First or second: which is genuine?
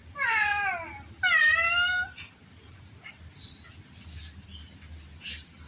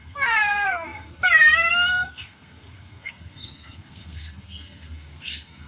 first